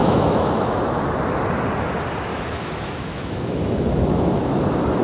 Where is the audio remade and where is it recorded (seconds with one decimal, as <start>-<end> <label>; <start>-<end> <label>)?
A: 0.0-1.0 remade; 1.0-2.3 recorded; 2.3-4.6 remade; 4.6-5.0 recorded